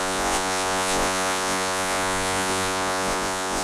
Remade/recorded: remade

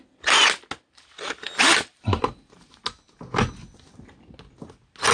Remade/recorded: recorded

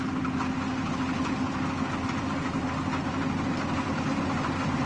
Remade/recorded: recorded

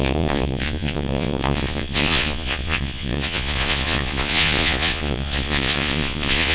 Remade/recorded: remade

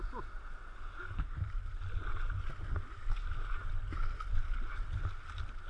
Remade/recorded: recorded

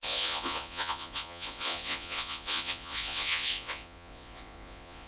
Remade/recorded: remade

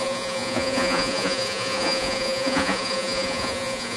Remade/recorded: remade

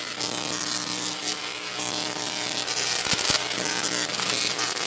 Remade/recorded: recorded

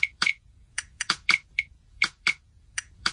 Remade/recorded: remade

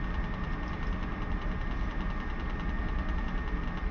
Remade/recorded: recorded